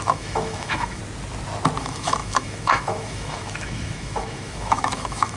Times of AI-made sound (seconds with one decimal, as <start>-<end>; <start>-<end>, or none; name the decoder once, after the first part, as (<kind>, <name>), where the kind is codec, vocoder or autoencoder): 0.0-1.0 (autoencoder, DAC-VAE); 1.8-5.4